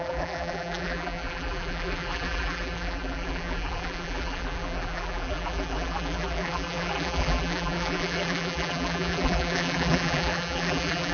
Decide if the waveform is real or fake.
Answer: fake